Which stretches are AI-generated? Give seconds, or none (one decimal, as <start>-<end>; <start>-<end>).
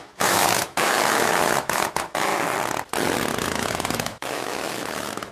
0.0-2.3; 3.4-5.3